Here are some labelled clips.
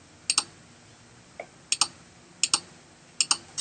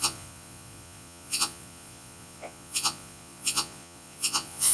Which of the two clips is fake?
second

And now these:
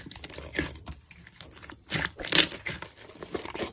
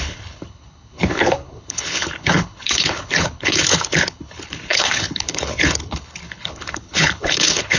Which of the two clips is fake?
second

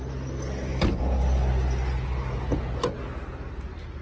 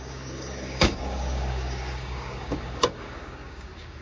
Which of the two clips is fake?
second